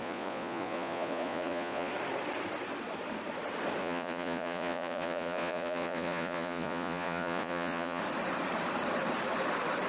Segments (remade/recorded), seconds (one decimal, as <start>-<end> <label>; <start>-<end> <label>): 0.0-1.9 remade; 1.9-3.8 recorded; 3.8-8.0 remade; 8.0-9.9 recorded